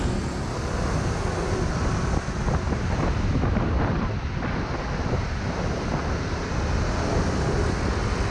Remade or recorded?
recorded